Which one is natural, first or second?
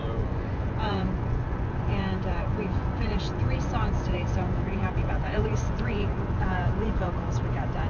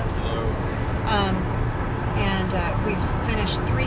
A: second